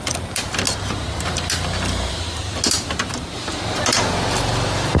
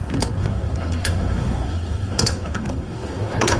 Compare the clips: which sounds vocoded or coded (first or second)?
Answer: second